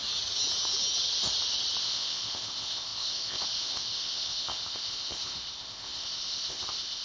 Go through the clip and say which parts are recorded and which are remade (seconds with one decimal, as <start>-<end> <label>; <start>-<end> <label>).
0.0-1.8 recorded; 1.8-7.0 remade